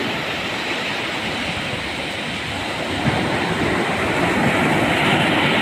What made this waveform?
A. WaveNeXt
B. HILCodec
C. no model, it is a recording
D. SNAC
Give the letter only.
C